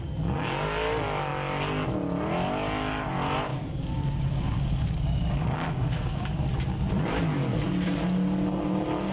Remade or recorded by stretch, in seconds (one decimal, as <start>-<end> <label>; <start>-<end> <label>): 0.0-3.5 recorded; 3.5-6.4 remade; 6.4-9.1 recorded